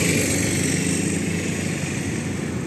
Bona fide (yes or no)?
yes